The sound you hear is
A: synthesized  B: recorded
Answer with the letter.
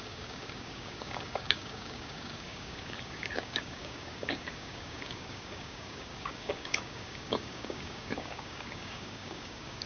A